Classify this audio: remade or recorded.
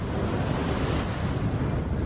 recorded